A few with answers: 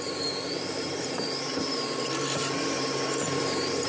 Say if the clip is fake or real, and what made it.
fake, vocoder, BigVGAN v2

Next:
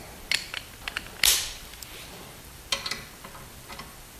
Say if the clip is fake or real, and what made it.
fake, vocoder, BigVGAN v2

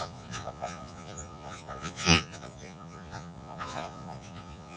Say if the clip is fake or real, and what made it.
fake, vocoder, Vocos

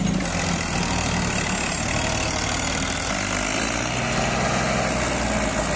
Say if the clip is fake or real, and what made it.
real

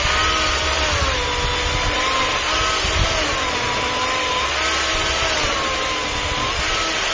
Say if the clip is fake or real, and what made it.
real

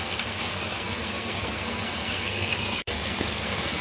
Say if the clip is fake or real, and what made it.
fake, codec, SNAC